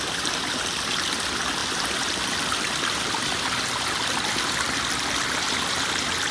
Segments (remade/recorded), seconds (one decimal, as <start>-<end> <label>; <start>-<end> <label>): 0.0-6.3 recorded